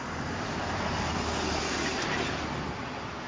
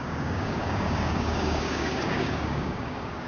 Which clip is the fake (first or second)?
second